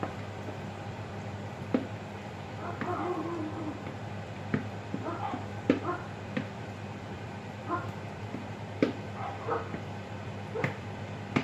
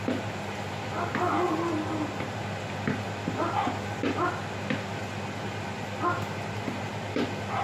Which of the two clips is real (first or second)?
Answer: second